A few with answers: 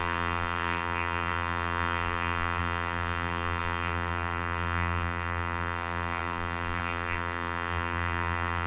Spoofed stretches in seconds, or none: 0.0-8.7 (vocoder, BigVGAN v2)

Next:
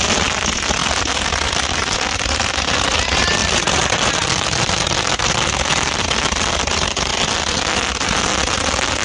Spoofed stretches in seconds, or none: 3.4-5.5 (vocoder, BigVGAN v2)

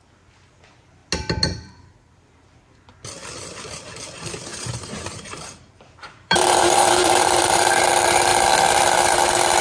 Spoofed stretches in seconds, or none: 4.5-7.9 (vocoder, BigVGAN v2)

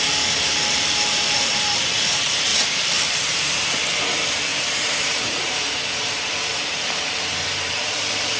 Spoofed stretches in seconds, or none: 0.0-2.5 (vocoder, BigVGAN v2); 3.1-8.4

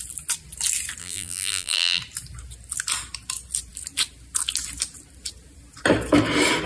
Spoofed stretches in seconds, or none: 1.0-2.0 (vocoder, BigVGAN v2)

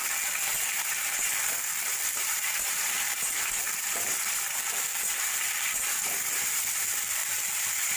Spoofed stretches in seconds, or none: 0.0-1.4 (vocoder, BigVGAN v2); 1.9-6.6; 7.2-8.0